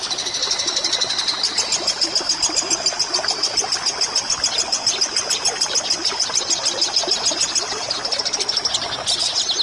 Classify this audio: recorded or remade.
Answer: recorded